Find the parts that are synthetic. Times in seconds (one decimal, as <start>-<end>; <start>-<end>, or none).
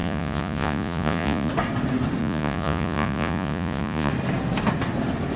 0.0-1.5; 2.2-4.1